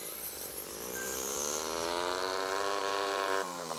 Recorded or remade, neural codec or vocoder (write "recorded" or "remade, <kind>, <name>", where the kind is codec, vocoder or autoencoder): remade, vocoder, BigVGAN v2